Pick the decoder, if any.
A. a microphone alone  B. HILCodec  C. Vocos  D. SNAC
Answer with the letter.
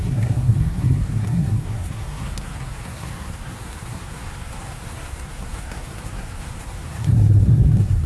D